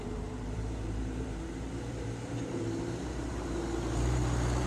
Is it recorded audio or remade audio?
remade